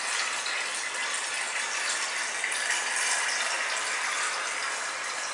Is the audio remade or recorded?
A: recorded